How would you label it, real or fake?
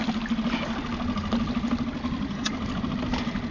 real